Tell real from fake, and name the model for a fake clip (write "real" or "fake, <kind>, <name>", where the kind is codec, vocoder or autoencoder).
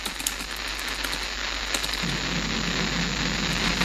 real